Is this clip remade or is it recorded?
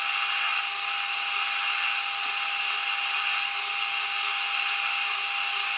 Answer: recorded